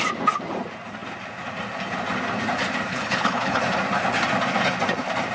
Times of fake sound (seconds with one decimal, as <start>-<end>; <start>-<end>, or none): 2.9-3.6